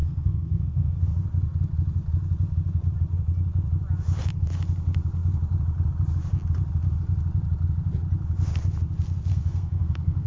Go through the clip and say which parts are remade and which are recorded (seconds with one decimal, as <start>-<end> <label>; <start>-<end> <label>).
0.0-1.0 remade; 1.0-9.3 recorded; 9.3-10.3 remade